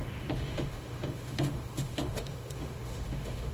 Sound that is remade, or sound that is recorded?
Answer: remade